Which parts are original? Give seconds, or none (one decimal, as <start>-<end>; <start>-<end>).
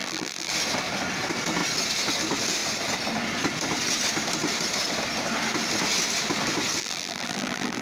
0.5-6.8